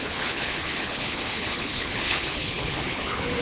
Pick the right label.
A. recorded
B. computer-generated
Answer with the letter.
B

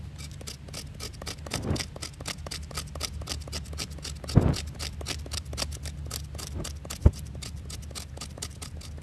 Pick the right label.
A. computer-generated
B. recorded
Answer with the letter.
B